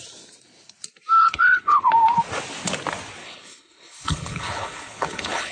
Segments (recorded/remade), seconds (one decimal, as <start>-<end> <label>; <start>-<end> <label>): 0.0-1.2 recorded; 1.2-1.9 remade; 1.9-3.2 recorded; 3.2-5.5 remade